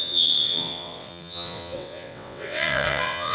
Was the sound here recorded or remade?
remade